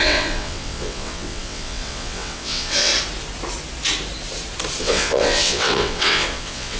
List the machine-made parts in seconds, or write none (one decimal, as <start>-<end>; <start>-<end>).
0.0-2.9; 4.8-6.8